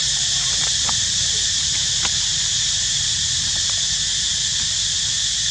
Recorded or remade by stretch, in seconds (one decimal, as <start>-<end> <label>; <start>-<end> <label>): 0.0-4.5 remade; 4.5-5.5 recorded